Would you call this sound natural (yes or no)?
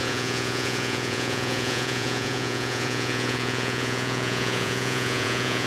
no